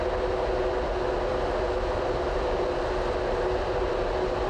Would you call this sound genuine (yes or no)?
yes